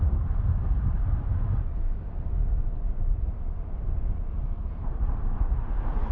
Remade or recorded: remade